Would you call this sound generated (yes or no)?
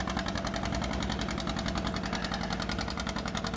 no